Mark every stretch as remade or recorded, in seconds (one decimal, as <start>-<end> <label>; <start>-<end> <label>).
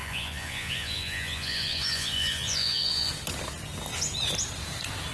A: 0.0-3.1 remade; 3.1-5.1 recorded